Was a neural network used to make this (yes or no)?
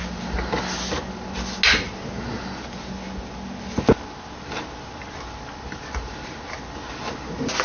no